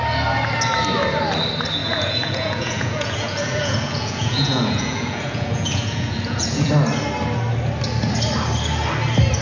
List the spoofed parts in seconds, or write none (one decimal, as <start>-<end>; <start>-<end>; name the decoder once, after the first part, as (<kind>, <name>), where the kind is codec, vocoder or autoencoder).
1.8-6.7 (vocoder, Vocos)